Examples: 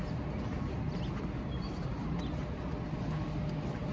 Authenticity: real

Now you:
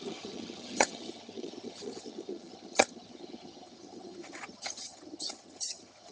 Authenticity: fake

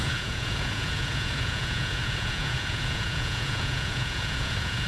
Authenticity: fake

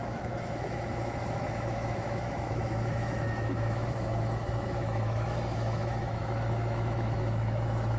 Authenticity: fake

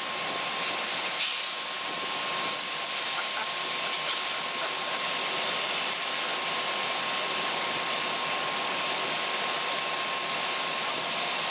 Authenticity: real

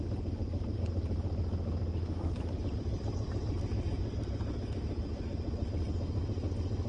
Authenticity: real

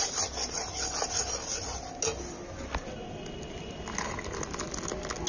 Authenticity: real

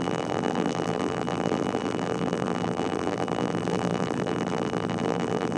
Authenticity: fake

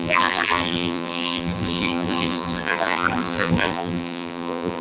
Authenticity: fake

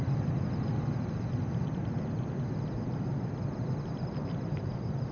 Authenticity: real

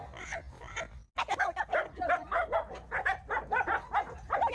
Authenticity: real